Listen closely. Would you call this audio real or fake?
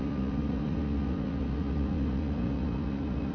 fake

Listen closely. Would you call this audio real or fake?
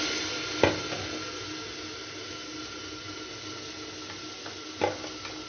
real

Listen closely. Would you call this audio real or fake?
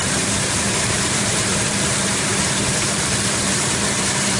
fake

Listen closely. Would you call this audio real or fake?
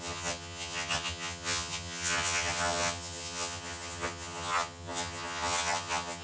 fake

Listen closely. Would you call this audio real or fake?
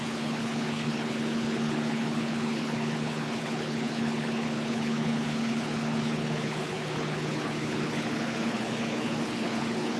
fake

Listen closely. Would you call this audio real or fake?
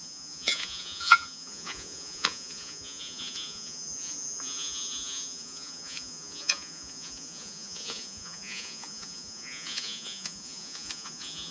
fake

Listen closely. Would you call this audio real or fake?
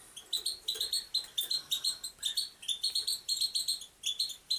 real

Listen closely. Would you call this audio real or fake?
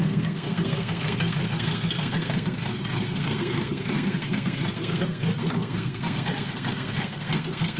fake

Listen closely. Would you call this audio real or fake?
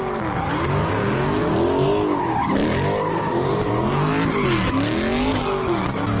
real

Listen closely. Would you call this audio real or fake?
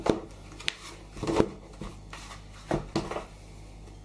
real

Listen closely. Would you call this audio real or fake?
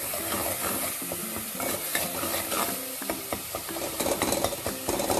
real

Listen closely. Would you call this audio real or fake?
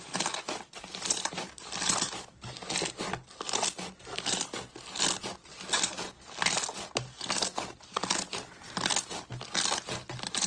real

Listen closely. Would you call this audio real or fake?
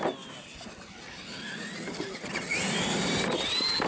real